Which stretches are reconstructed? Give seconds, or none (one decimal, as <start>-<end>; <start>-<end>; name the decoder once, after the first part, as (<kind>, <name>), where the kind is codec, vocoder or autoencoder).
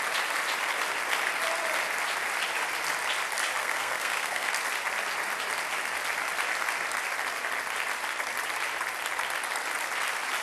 3.6-4.5 (codec, SNAC)